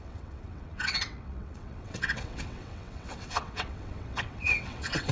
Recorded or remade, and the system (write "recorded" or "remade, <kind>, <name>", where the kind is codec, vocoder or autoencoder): remade, vocoder, WaveNeXt